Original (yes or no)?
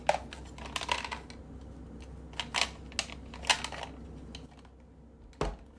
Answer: yes